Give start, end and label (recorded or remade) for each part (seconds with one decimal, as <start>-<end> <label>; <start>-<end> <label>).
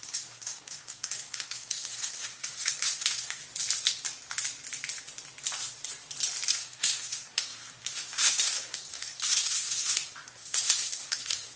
0.0-3.4 remade; 3.4-6.5 recorded; 6.5-11.6 remade